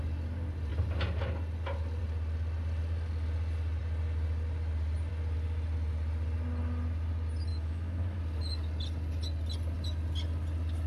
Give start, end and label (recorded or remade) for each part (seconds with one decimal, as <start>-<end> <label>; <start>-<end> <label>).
0.0-7.5 recorded; 7.5-8.2 remade; 8.2-10.9 recorded